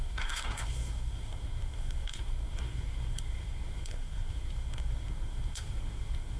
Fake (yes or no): yes